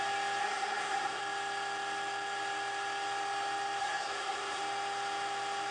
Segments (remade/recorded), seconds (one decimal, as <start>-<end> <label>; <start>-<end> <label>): 0.0-0.4 recorded; 0.4-1.2 remade; 1.2-3.8 recorded; 3.8-4.6 remade; 4.6-5.7 recorded